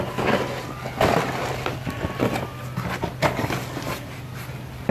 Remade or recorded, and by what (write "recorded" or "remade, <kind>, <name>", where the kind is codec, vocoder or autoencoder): recorded